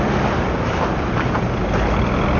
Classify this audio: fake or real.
real